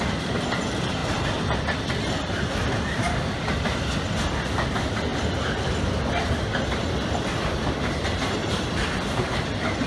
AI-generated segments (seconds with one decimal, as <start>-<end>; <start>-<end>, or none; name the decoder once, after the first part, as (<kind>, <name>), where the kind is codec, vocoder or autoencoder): 5.1-6.1 (vocoder, BigVGAN v2); 8.4-9.3